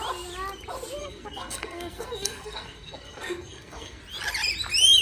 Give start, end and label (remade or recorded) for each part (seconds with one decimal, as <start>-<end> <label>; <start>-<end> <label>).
0.0-1.0 recorded; 1.0-4.0 remade; 4.0-5.0 recorded